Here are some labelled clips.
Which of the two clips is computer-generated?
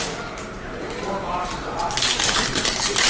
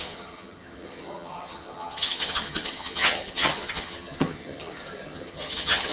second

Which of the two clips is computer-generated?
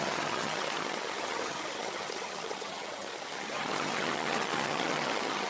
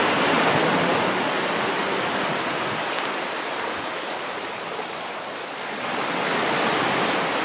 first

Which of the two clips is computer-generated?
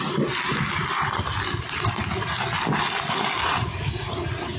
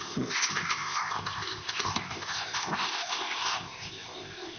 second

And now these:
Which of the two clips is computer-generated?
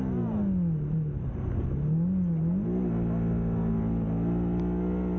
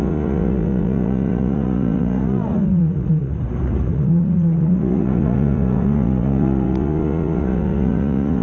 second